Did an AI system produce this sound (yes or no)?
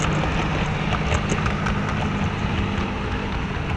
no